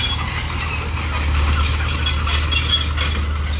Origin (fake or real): real